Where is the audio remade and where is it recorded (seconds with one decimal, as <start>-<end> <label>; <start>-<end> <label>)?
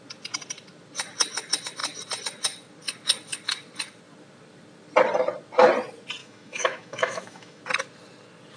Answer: 0.0-6.2 recorded; 6.2-7.6 remade; 7.6-8.6 recorded